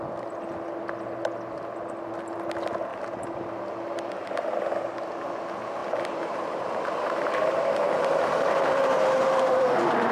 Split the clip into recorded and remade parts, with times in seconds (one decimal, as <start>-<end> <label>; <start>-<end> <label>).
0.0-2.9 recorded; 2.9-3.5 remade; 3.5-5.8 recorded; 5.8-9.7 remade; 9.7-10.1 recorded